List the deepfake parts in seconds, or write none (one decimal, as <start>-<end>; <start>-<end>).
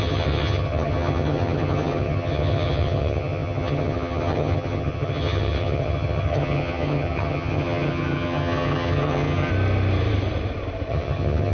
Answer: 0.0-9.5; 10.9-11.5